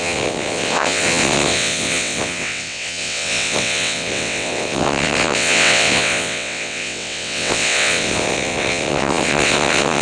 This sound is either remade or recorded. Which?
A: remade